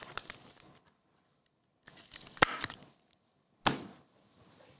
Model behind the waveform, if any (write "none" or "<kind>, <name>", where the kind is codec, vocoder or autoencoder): none